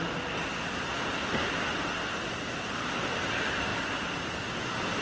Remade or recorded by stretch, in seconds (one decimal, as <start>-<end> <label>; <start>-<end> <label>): 0.0-5.0 remade